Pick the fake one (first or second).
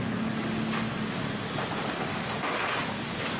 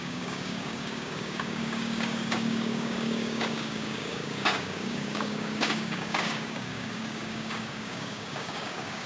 second